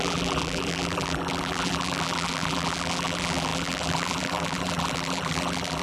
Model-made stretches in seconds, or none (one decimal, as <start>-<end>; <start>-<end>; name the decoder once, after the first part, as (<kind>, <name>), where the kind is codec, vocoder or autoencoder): 0.0-5.8 (vocoder, BigVGAN v2)